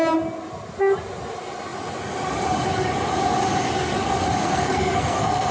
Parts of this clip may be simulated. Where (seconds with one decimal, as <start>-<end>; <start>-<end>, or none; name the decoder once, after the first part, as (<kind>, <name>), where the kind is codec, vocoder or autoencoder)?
4.4-5.5 (codec, SNAC)